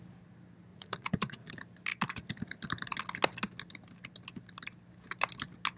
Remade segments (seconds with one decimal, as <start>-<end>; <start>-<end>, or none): 0.7-1.5